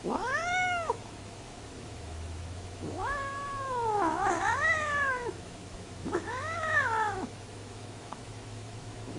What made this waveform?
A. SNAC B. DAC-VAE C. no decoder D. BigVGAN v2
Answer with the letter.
B